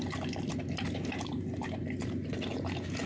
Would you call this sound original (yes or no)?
yes